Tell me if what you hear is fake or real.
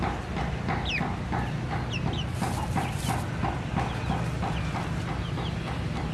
real